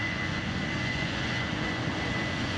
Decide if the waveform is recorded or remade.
remade